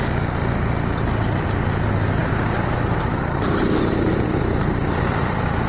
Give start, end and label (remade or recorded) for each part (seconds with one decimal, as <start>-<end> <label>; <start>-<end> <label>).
0.0-2.2 recorded; 2.2-5.7 remade